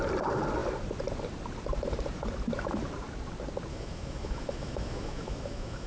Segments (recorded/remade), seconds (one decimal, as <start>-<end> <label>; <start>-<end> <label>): 0.0-3.7 recorded; 3.7-5.9 remade